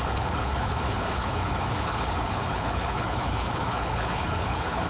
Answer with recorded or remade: remade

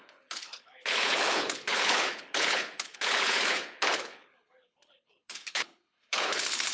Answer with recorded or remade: remade